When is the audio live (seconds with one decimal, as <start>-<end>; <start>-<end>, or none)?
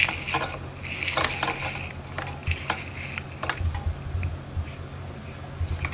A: 0.0-5.9